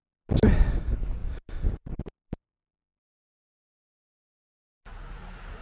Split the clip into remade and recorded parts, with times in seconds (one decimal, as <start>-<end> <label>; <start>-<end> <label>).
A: 0.0-5.6 recorded